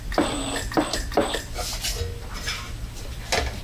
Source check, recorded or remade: recorded